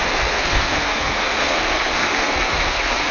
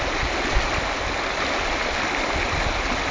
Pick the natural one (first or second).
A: second